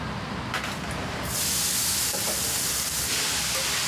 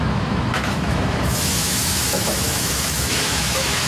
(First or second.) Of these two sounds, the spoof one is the second